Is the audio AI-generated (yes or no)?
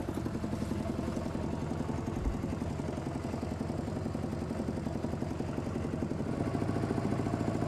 no